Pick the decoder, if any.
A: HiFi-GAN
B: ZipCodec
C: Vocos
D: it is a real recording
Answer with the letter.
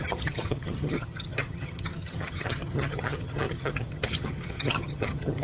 A